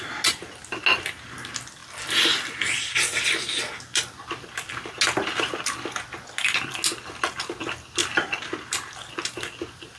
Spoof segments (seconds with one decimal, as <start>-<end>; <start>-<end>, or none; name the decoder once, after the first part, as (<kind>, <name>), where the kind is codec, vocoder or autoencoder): none